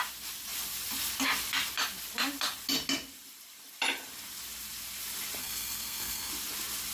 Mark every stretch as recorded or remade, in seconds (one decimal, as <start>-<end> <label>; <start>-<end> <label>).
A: 0.0-5.4 recorded; 5.4-6.3 remade; 6.3-6.9 recorded